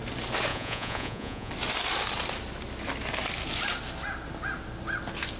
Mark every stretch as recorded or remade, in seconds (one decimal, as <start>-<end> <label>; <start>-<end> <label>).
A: 0.0-0.5 recorded; 0.5-1.5 remade; 1.5-5.4 recorded